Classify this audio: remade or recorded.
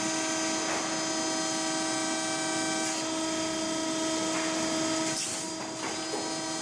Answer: recorded